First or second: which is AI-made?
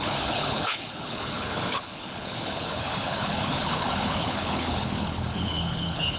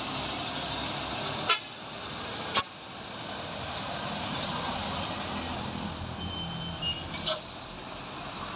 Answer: first